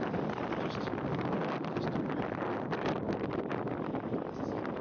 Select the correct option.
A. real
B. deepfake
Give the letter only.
A